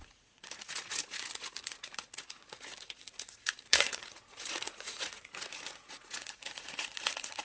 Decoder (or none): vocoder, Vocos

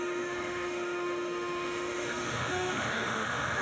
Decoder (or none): autoencoder, DAC-VAE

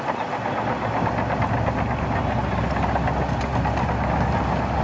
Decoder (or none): none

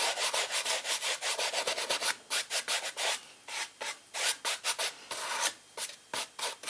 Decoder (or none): none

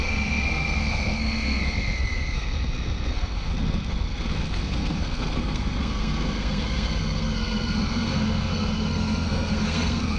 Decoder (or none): codec, SNAC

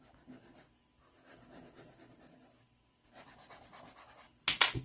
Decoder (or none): none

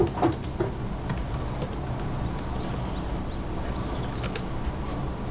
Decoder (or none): none